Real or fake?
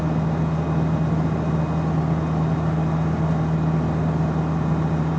real